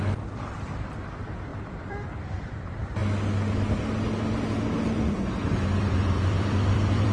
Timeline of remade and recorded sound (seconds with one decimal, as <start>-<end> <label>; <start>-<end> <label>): 0.0-3.0 remade; 3.0-4.8 recorded; 4.8-7.1 remade